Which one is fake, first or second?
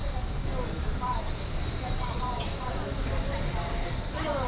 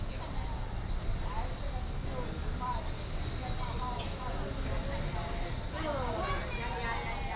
first